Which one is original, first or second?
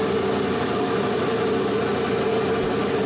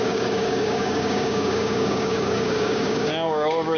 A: first